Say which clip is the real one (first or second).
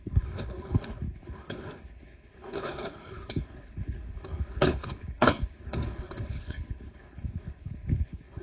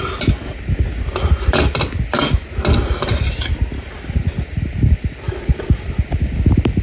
second